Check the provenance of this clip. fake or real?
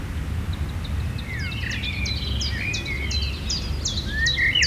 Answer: real